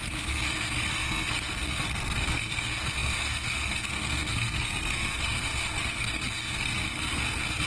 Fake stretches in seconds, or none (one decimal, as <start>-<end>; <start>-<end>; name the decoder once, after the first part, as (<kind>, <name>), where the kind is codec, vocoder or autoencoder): 0.0-7.7 (codec, SNAC)